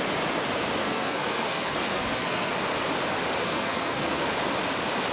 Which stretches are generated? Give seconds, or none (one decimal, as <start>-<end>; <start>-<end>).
0.8-2.5; 3.4-4.2